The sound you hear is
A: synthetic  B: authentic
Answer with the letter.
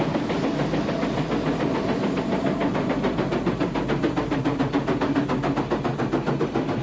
B